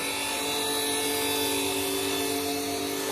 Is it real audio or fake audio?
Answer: real